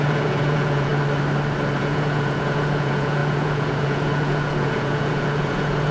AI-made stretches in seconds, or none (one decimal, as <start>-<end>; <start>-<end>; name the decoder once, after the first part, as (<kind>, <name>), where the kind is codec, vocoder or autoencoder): 0.0-0.9 (vocoder, Vocos); 1.8-5.9